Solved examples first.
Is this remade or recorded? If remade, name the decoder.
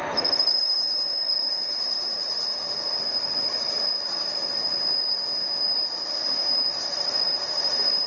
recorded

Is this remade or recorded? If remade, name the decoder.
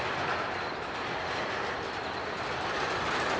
recorded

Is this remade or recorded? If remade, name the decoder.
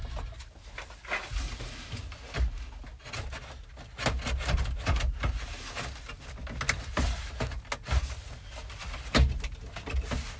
recorded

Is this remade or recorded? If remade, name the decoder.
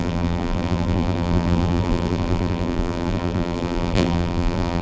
remade, vocoder, BigVGAN v2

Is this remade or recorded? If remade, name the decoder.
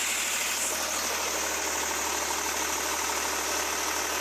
recorded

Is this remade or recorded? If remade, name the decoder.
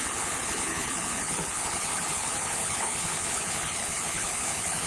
remade, codec, HILCodec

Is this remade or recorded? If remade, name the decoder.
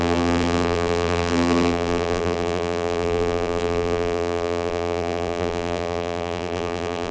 remade, vocoder, BigVGAN v2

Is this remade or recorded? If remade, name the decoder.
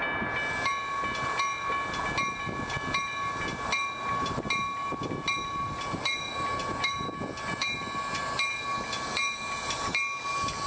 recorded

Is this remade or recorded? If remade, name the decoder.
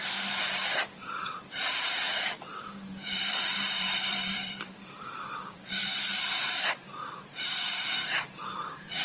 remade, vocoder, BigVGAN v2